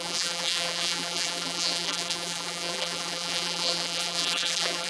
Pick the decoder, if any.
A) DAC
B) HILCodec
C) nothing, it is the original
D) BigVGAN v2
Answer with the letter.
D